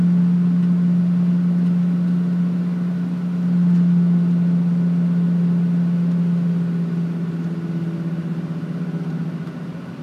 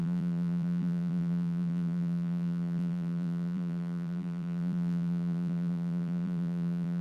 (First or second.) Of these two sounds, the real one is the first